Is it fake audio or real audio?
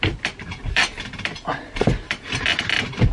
real